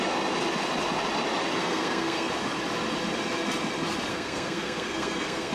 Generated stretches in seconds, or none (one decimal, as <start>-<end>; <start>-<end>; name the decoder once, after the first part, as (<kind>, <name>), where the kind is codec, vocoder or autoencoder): 1.6-2.3 (codec, SNAC); 4.1-5.5

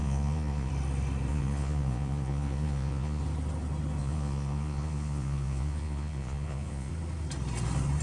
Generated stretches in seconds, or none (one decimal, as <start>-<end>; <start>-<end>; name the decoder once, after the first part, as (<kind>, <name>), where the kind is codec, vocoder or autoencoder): 0.0-0.7 (vocoder, Vocos); 1.3-3.2; 4.0-6.9

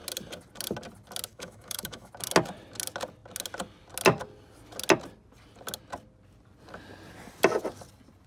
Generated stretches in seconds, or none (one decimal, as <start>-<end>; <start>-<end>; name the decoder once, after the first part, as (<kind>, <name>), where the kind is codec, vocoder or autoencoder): 1.3-2.1 (autoencoder, DAC-VAE)

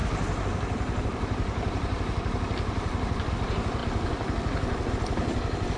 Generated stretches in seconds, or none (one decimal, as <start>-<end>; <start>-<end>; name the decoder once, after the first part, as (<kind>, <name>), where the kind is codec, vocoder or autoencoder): 0.0-3.3 (vocoder, BigVGAN v2)